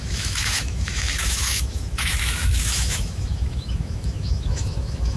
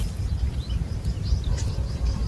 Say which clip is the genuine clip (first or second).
second